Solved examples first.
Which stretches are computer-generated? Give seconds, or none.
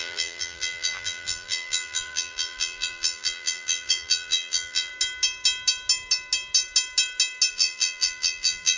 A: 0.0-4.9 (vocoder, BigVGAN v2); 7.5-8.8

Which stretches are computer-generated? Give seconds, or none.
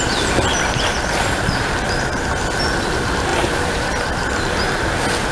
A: 3.3-3.9 (vocoder, BigVGAN v2)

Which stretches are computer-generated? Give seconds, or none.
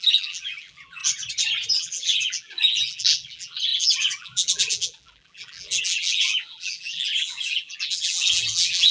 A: 0.0-1.0 (vocoder, BigVGAN v2); 1.8-8.9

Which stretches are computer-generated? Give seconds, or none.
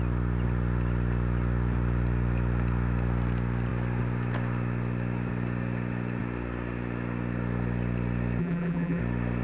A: 8.4-9.0 (vocoder, BigVGAN v2)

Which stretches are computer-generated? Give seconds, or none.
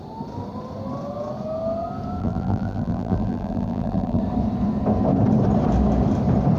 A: 2.2-4.2 (vocoder, BigVGAN v2)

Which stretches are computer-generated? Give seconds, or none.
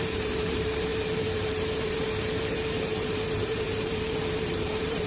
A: 0.0-5.1 (vocoder, BigVGAN v2)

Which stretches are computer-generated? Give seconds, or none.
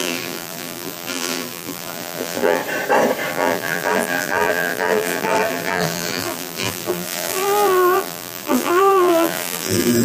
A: 0.0-2.6 (vocoder, BigVGAN v2); 3.3-10.0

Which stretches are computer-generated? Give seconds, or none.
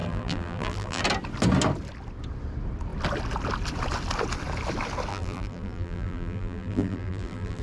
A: 0.0-1.0 (vocoder, BigVGAN v2); 5.1-7.6